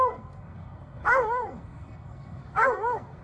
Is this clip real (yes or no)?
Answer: no